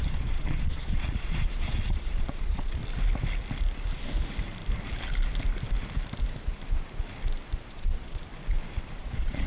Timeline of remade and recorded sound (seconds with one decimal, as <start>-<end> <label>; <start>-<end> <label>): 0.0-2.8 remade; 2.8-7.7 recorded; 7.7-8.2 remade; 8.2-9.0 recorded; 9.0-9.5 remade